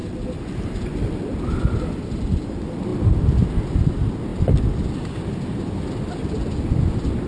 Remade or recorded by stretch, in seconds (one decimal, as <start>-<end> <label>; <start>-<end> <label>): 0.0-7.3 recorded